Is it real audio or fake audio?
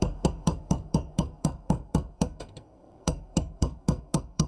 fake